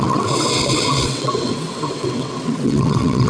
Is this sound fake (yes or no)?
yes